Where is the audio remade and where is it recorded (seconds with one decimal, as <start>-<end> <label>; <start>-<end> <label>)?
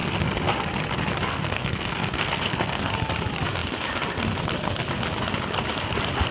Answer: 0.0-0.5 remade; 0.5-1.3 recorded; 1.3-2.9 remade; 2.9-6.3 recorded